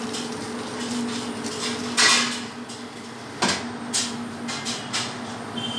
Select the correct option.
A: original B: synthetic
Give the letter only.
A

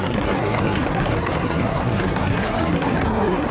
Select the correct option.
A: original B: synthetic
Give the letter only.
B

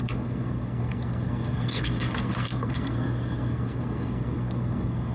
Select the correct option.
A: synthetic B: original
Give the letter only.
A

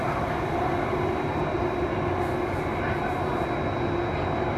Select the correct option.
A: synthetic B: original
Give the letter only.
B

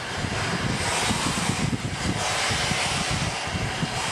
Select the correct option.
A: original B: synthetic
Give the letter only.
A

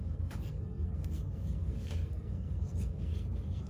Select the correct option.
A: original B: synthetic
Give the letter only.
B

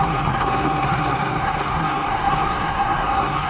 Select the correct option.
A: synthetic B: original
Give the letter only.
A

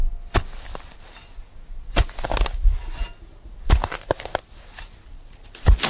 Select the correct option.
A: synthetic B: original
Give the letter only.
B